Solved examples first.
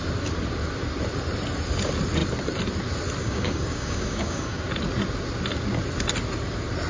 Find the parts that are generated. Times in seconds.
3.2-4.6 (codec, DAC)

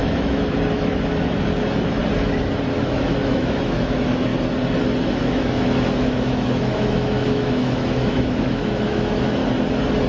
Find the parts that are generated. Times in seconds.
0.0-2.0 (autoencoder, DAC-VAE); 2.8-4.3; 5.1-9.4

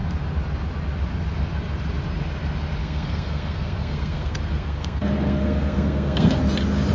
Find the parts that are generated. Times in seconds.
2.8-6.4 (codec, SNAC)

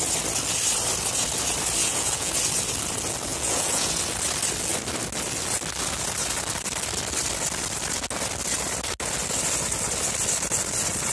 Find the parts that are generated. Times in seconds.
1.8-2.3 (vocoder, Vocos); 3.3-3.9

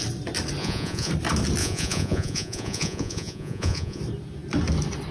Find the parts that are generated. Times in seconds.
0.6-1.1 (vocoder, Vocos); 1.6-4.0

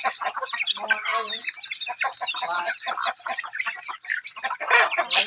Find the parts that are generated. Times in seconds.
none

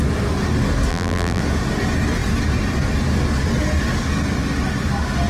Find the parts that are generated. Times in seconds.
0.9-1.4 (vocoder, BigVGAN v2)

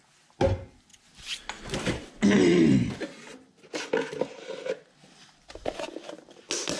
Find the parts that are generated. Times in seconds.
none